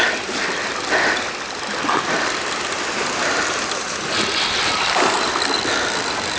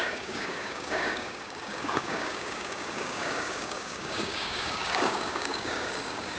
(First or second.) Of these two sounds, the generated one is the second